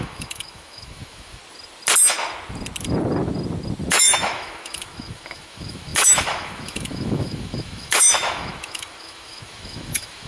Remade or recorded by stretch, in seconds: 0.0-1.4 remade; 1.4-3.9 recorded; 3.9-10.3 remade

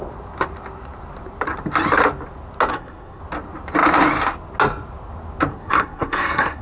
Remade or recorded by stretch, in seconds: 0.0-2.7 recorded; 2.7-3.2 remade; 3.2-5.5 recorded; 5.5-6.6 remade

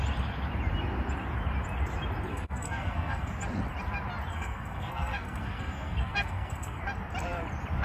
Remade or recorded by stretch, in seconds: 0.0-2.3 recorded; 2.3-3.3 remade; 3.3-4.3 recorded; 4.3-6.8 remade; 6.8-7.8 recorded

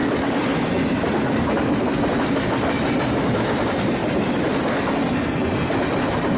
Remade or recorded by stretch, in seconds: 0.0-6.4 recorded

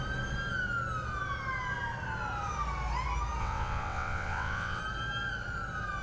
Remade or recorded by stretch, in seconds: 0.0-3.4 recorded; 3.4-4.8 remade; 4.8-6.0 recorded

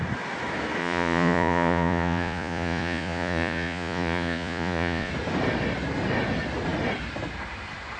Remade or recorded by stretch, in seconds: 0.0-0.8 recorded; 0.8-5.1 remade; 5.1-8.0 recorded